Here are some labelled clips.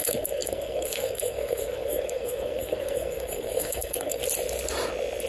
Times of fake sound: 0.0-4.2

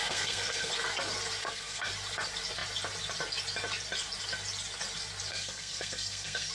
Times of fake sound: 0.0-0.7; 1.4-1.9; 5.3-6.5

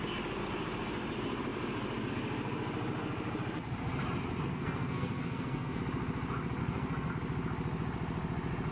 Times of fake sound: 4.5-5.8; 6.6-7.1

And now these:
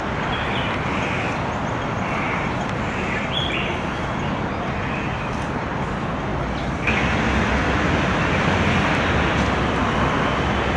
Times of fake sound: none

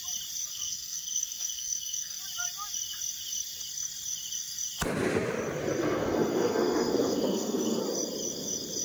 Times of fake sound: 0.5-2.2; 5.8-7.8

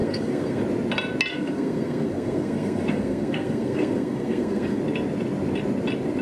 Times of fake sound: 0.0-0.6; 1.3-4.8

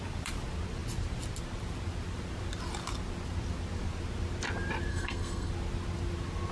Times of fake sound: 4.9-5.5